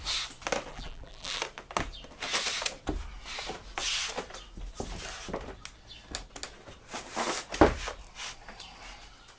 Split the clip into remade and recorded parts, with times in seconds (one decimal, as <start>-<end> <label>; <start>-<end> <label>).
0.0-0.7 recorded; 0.7-1.4 remade; 1.4-9.4 recorded